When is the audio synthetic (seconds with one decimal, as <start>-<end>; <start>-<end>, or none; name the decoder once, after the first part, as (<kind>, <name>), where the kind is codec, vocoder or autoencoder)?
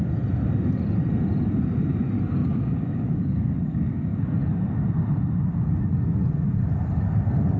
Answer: 2.4-4.2 (codec, DAC)